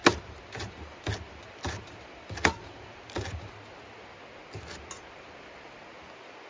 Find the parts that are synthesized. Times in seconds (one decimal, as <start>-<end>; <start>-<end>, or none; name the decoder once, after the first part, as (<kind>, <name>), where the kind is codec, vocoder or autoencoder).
0.0-3.5 (vocoder, BigVGAN v2)